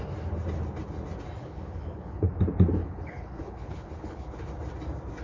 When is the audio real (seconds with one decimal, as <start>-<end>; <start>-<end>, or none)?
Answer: 0.0-1.4; 2.3-2.8; 4.5-5.2

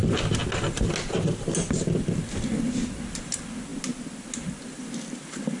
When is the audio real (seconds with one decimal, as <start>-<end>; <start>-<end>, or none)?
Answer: 0.0-5.6

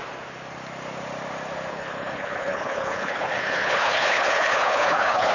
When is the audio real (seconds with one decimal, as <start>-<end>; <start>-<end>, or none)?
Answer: 0.0-1.7

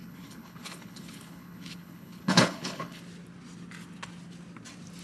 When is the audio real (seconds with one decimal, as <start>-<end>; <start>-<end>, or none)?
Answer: 3.0-5.0

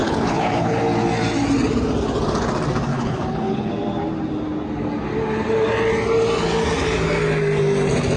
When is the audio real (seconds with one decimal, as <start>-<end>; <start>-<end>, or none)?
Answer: 0.8-2.9; 3.7-8.2

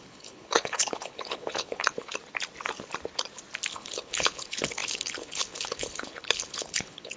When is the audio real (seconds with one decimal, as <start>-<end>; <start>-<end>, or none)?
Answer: 2.1-3.7

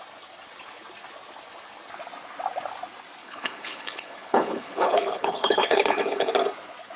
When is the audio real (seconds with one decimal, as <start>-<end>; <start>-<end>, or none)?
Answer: 0.0-3.2; 6.3-7.0